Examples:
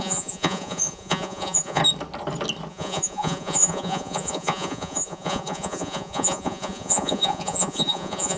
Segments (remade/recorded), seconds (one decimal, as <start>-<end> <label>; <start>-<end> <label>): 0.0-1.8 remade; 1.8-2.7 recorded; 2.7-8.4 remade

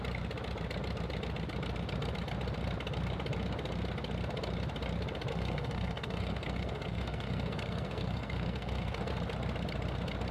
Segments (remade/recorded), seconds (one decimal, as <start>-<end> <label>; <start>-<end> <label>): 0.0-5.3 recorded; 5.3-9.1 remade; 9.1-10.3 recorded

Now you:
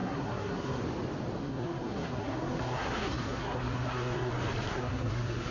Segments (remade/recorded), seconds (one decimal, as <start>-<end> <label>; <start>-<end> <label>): 0.0-0.8 remade; 0.8-1.4 recorded; 1.4-4.3 remade; 4.3-4.7 recorded; 4.7-5.5 remade

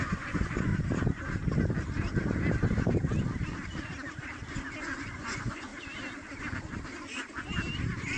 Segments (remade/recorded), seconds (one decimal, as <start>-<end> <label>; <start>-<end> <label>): 0.0-0.7 remade; 0.7-4.8 recorded; 4.8-5.7 remade; 5.7-8.2 recorded

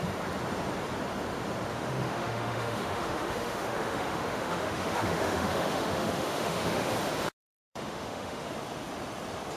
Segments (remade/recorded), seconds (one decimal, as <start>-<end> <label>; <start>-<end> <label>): 0.0-1.7 recorded; 1.7-6.9 remade; 6.9-7.4 recorded; 7.4-8.5 remade; 8.5-9.6 recorded

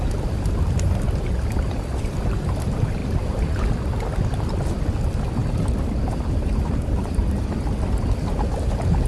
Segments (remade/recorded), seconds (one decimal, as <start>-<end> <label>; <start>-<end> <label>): 0.0-3.0 recorded; 3.0-3.6 remade; 3.6-5.4 recorded; 5.4-7.3 remade; 7.3-9.1 recorded